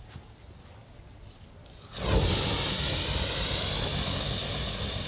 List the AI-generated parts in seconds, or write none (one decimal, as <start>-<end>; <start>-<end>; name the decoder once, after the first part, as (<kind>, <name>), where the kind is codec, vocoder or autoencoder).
none